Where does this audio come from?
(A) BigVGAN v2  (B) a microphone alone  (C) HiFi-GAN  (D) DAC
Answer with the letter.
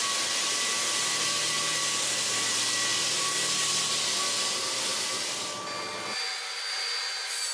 B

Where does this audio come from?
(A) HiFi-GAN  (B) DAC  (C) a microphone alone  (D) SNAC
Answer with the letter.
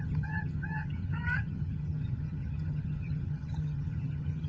A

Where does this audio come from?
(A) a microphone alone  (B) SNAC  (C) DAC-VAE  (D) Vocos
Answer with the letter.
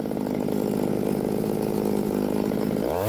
A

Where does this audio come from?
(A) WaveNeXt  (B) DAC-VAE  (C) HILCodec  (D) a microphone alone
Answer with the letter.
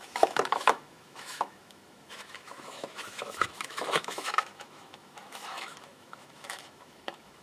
B